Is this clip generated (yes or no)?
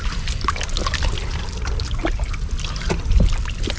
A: no